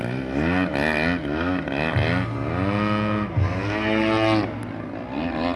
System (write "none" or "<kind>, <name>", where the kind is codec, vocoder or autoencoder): none